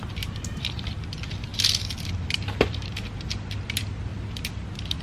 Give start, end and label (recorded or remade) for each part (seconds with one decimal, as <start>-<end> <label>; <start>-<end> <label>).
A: 0.0-5.0 recorded